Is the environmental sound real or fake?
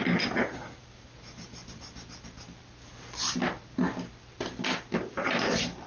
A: real